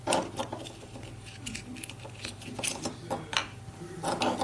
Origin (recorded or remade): recorded